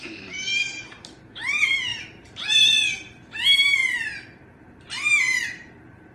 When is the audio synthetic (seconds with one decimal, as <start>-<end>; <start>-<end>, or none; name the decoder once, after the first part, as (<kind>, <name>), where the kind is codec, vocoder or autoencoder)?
0.0-0.5 (vocoder, BigVGAN v2); 1.2-6.1